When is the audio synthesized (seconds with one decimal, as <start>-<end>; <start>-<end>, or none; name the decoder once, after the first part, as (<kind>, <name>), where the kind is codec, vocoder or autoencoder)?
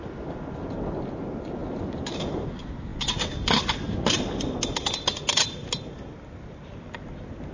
none